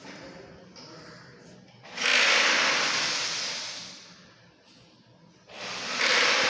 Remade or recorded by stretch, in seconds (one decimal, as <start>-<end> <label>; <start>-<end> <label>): 0.0-6.5 recorded